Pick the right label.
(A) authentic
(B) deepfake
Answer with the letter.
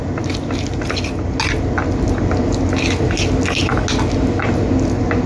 A